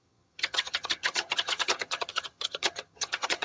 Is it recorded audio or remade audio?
remade